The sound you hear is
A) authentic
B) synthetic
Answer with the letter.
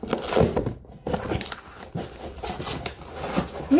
A